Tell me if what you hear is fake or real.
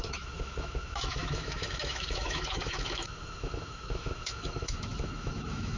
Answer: fake